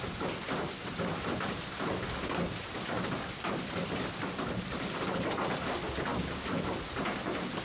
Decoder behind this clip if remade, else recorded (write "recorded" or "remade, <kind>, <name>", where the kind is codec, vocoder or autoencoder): recorded